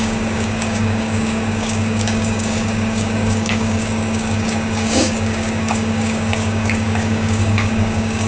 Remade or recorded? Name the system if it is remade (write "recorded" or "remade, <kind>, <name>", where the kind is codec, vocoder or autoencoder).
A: remade, codec, DAC